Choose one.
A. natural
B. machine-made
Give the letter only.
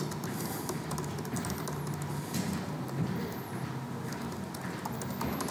A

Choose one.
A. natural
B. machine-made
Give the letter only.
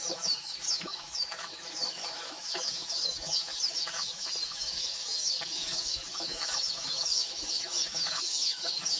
B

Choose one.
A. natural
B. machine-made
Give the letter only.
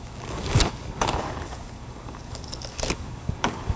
B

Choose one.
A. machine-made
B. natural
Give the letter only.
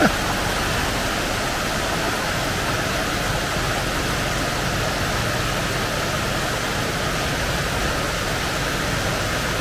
B